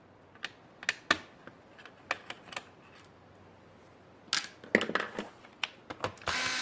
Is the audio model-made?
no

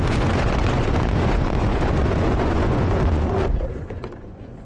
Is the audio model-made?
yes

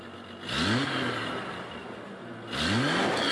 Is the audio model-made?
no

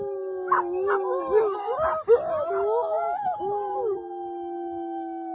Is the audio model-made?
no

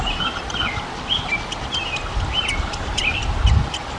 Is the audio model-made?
no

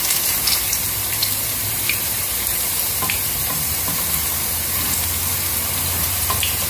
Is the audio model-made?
yes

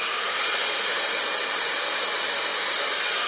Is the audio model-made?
no